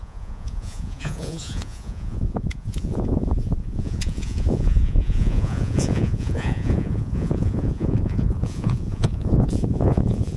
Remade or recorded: remade